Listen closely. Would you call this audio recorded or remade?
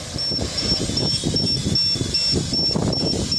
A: recorded